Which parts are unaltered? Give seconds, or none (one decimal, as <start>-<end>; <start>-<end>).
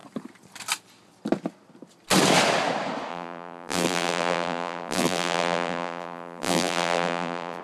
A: 0.0-3.1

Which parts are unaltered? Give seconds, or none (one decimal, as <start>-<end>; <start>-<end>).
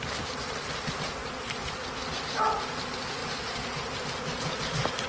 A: 0.0-5.1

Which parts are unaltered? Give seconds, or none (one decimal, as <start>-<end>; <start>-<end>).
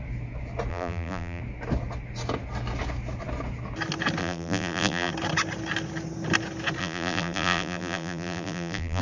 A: 0.0-0.7; 1.4-4.2; 5.1-6.8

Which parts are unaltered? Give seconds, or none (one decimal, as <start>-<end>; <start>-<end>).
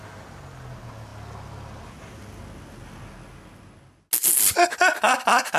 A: 0.0-5.6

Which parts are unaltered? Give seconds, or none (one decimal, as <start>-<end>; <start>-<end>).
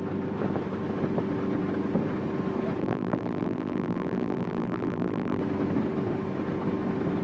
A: 0.0-2.8; 5.4-7.2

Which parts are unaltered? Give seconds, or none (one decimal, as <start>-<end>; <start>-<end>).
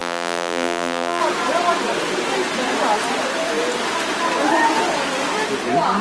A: 1.2-6.0